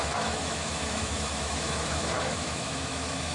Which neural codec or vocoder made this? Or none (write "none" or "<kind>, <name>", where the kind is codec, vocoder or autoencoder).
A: autoencoder, DAC-VAE